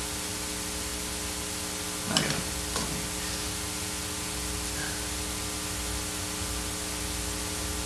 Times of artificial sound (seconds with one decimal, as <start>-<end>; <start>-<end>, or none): none